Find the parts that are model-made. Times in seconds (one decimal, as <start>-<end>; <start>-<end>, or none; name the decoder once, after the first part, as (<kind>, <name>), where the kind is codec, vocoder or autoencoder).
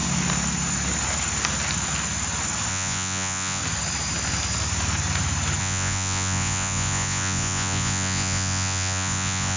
2.7-3.6 (vocoder, Vocos); 5.6-9.6